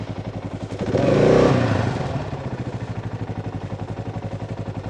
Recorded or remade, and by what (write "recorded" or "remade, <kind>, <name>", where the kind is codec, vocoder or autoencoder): remade, vocoder, BigVGAN v2